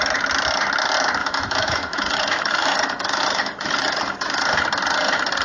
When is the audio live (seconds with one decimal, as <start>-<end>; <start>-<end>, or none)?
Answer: 0.0-1.2; 4.4-5.4